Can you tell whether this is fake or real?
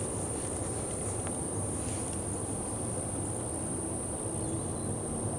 real